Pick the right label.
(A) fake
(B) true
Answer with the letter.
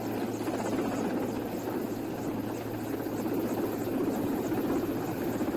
B